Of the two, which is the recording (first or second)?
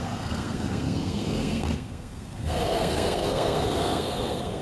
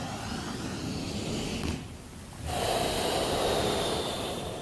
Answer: second